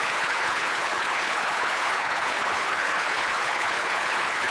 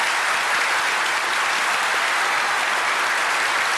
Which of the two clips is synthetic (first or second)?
first